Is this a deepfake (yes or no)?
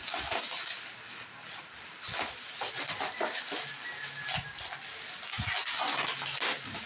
no